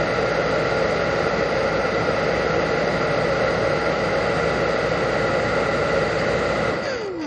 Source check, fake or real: real